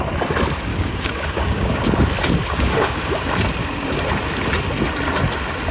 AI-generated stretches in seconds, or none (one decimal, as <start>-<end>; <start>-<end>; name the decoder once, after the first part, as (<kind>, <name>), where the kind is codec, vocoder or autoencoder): 0.7-1.9 (codec, DAC); 2.4-3.0